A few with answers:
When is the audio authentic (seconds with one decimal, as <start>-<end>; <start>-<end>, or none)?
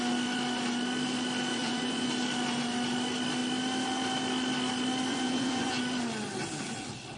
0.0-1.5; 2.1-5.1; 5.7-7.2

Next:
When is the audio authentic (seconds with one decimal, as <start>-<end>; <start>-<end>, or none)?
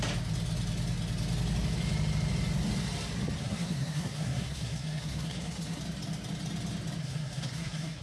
0.0-3.4; 5.8-7.0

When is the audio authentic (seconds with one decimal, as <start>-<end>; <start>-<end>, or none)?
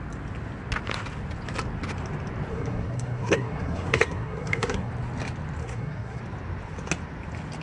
0.0-2.5; 4.9-5.6; 6.2-7.6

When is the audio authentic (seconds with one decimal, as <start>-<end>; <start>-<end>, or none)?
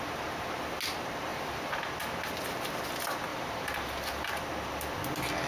0.0-1.3; 1.8-3.3; 4.3-5.5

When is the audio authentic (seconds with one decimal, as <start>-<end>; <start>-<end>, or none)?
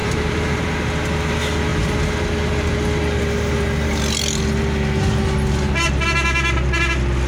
0.6-7.3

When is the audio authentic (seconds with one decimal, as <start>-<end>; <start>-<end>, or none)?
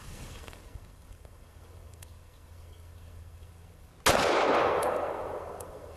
3.9-4.6